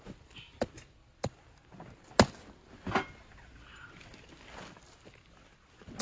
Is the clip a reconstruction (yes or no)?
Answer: no